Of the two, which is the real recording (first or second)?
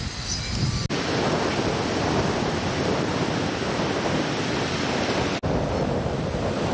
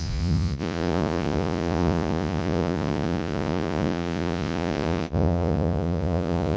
first